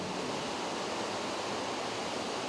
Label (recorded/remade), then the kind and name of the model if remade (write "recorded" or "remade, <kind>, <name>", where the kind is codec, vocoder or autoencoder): recorded